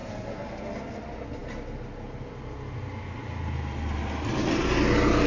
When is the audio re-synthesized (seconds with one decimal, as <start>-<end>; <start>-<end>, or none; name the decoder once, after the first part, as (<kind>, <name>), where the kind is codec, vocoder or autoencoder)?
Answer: none

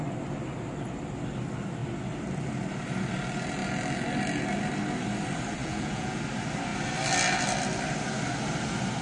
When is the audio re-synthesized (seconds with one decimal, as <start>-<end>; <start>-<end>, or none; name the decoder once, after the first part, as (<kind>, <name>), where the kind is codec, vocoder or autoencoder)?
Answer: 5.6-6.2 (vocoder, Vocos)